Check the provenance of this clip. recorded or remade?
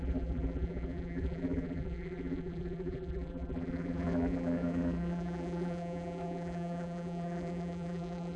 remade